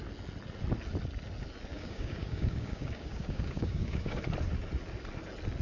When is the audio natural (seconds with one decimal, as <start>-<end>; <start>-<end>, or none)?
0.0-1.7; 4.2-5.6

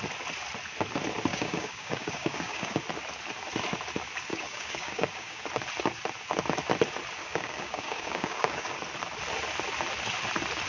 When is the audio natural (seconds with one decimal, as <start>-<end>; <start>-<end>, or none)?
0.0-1.3; 2.8-4.3; 5.4-7.2; 8.8-10.7

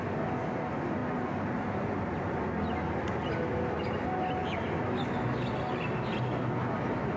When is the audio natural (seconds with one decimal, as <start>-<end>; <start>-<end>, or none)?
0.0-7.2

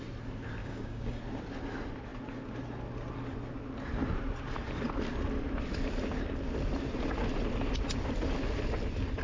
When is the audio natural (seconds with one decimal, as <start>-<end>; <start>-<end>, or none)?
0.0-0.6; 1.2-9.2

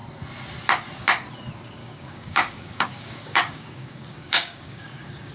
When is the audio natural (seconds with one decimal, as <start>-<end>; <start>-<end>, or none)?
0.0-1.8

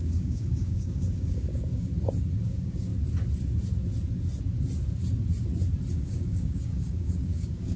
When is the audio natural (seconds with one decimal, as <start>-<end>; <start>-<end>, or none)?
1.9-2.4; 2.9-6.0

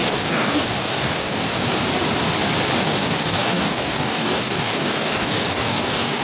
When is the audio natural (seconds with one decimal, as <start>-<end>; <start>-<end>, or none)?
1.5-2.8